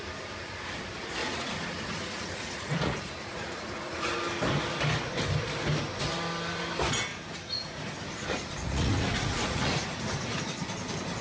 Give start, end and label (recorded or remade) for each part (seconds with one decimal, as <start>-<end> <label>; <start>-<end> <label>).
0.0-1.2 recorded; 1.2-4.1 remade; 4.1-7.1 recorded; 7.1-10.4 remade; 10.4-11.2 recorded